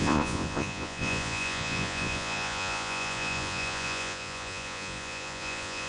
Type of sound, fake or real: fake